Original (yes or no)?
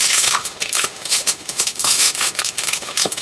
no